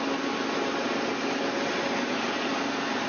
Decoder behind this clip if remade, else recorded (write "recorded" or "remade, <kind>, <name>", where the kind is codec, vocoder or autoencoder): remade, vocoder, BigVGAN v2